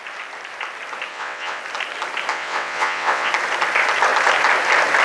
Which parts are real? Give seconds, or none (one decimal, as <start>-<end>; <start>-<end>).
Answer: 0.0-1.1; 1.6-2.3; 3.3-5.0